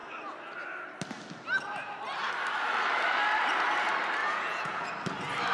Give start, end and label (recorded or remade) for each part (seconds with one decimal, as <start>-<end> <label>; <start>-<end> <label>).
0.0-4.2 recorded; 4.2-4.9 remade; 4.9-5.5 recorded